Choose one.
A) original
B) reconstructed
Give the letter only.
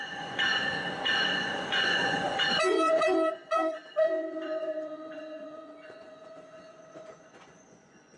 B